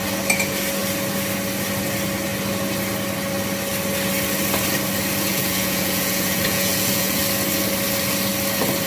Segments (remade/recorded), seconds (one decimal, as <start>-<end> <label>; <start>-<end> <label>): 0.0-5.3 recorded; 5.3-7.2 remade; 7.2-8.9 recorded